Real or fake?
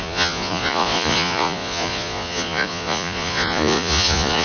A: fake